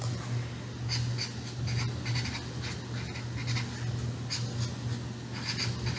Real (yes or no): yes